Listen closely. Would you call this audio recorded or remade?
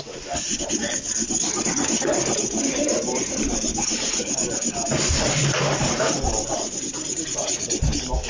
recorded